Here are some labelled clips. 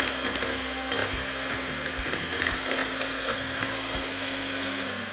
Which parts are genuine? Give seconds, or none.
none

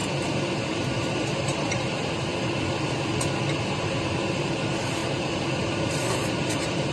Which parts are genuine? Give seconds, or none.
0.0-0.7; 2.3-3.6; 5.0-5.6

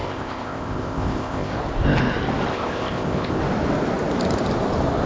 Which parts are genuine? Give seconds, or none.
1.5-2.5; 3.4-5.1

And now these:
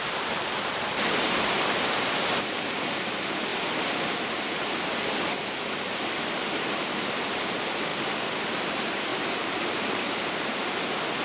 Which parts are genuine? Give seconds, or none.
3.5-5.9; 7.9-8.4